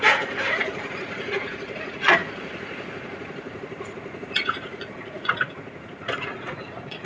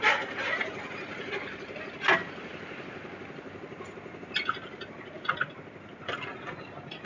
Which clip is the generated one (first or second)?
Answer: first